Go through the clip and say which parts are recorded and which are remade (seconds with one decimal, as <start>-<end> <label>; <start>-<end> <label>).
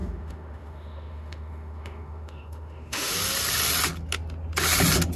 0.0-3.1 remade; 3.1-5.2 recorded